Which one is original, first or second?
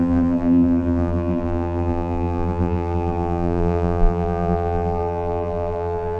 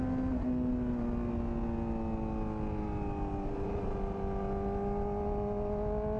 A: second